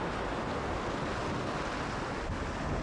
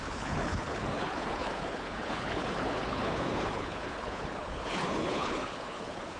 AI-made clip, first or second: second